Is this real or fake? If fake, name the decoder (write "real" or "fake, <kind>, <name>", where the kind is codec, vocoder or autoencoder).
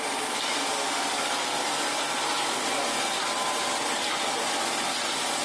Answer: real